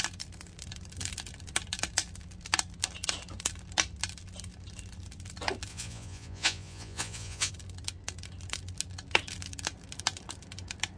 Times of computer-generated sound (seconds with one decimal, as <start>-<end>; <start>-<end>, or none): 5.7-7.5